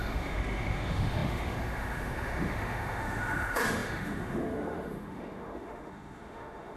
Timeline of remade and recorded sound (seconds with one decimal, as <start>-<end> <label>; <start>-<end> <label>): 0.0-6.8 remade